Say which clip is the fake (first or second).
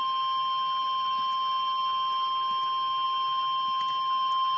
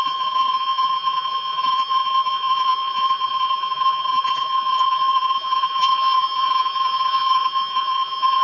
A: second